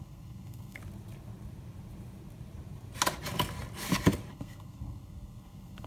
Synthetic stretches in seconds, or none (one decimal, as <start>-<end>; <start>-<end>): 0.0-0.8; 4.3-5.9